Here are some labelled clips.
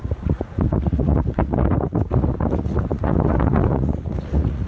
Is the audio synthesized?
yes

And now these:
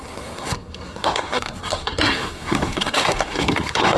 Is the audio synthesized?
yes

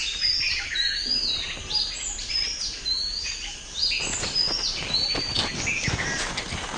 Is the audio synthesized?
no